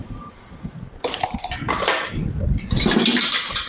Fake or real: real